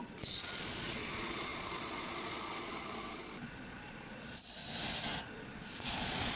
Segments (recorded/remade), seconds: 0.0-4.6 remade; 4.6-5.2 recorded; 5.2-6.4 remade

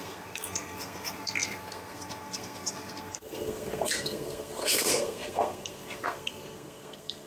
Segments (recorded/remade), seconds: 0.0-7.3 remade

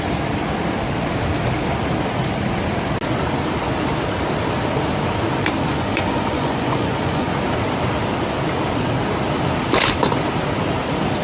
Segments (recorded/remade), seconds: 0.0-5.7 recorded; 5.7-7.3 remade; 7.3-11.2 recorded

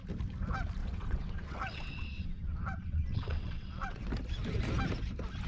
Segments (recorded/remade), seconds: 0.0-0.8 recorded; 0.8-4.1 remade; 4.1-5.5 recorded

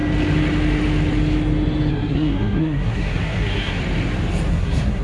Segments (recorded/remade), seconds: 0.0-1.9 recorded; 1.9-3.8 remade; 3.8-4.5 recorded; 4.5-5.0 remade